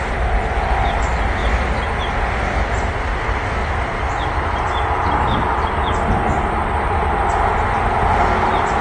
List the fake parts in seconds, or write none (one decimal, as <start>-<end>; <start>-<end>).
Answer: none